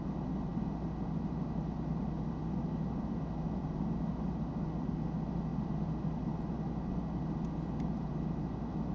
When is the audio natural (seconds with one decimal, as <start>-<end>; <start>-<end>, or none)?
0.0-8.9